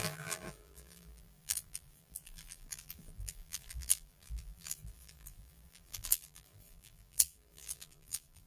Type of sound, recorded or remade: remade